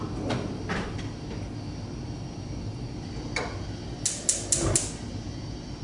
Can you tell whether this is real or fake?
real